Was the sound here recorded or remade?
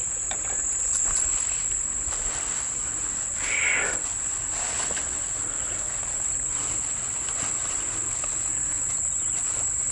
recorded